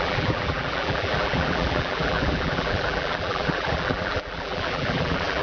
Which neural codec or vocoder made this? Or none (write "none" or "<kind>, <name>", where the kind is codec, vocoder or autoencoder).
vocoder, BigVGAN v2